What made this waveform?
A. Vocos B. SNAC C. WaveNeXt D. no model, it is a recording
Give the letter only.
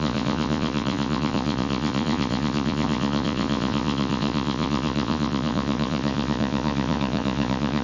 A